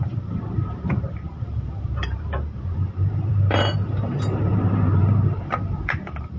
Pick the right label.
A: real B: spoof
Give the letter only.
B